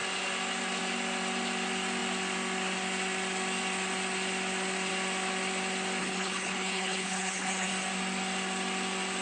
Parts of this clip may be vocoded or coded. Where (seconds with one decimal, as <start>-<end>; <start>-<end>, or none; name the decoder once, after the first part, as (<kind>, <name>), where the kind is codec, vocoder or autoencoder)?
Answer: 6.0-7.7 (codec, HILCodec)

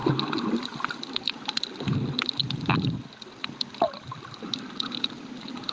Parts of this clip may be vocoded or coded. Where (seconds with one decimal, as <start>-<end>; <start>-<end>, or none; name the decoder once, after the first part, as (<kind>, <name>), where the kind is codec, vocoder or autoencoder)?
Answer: 2.4-4.6 (vocoder, BigVGAN v2)